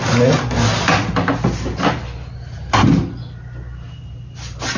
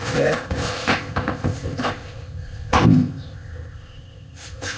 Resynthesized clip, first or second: second